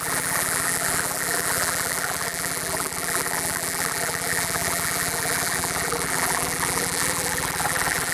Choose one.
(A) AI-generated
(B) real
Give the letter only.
A